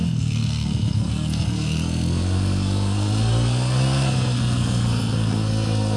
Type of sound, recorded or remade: remade